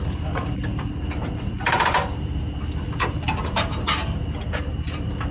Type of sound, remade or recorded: recorded